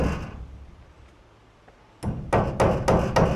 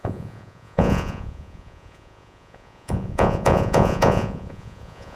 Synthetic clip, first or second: second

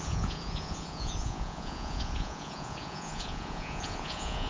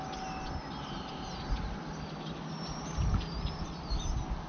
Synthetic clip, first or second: first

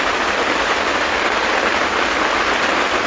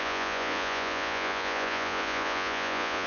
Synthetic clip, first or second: second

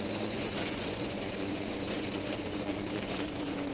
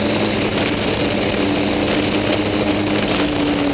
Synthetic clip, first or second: first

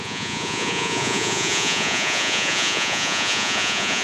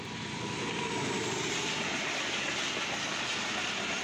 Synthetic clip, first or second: first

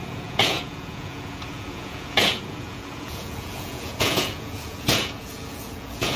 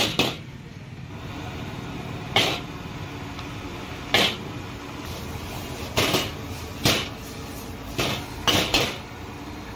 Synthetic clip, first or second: first